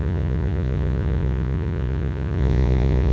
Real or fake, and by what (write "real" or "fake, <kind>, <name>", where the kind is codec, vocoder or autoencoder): fake, vocoder, Vocos